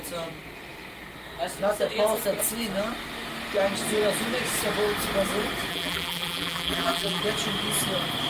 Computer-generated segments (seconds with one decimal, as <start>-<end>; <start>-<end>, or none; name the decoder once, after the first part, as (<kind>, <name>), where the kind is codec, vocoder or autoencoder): 5.7-7.2 (vocoder, BigVGAN v2)